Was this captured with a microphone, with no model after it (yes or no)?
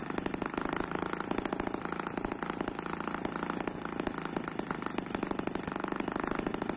yes